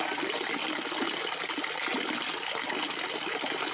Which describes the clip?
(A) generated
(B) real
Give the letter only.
B